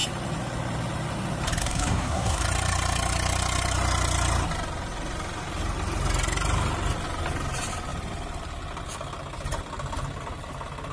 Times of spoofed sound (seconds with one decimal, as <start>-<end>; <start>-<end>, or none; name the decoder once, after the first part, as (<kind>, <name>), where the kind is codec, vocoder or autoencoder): 1.6-2.4 (codec, SNAC)